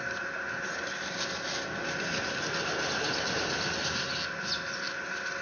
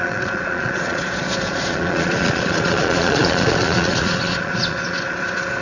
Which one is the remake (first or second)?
second